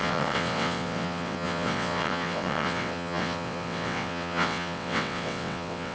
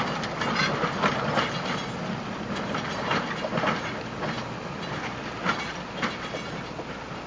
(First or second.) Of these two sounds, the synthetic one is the first